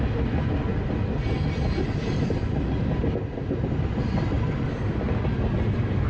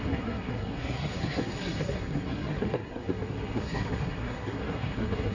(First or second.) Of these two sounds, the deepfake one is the second